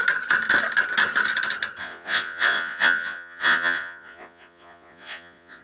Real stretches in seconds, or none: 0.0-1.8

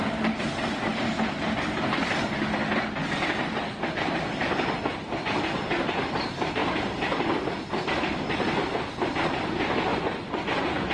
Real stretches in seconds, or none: 0.0-9.9

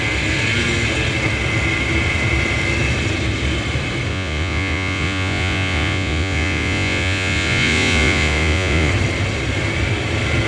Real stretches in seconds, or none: 0.0-4.1; 8.9-10.5

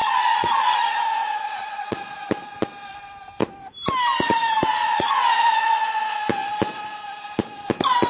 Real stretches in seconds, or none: 2.2-4.7; 5.8-8.1

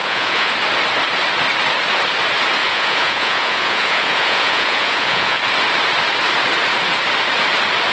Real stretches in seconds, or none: 0.5-2.6; 5.4-7.9

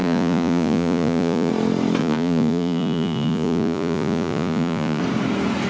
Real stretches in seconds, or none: 1.5-2.0; 5.0-5.7